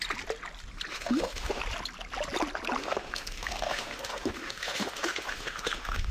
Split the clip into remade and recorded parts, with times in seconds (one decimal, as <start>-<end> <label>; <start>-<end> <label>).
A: 0.0-0.9 recorded; 0.9-1.6 remade; 1.6-2.8 recorded; 2.8-6.1 remade